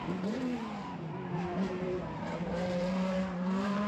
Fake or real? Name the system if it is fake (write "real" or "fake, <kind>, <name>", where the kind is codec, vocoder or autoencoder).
fake, vocoder, BigVGAN v2